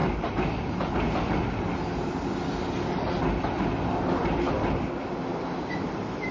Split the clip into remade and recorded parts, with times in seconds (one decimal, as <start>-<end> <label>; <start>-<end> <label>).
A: 0.0-6.3 recorded